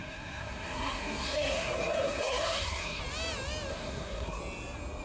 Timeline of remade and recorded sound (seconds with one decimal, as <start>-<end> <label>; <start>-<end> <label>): 0.0-3.0 remade; 3.0-3.7 recorded; 3.7-4.4 remade; 4.4-5.0 recorded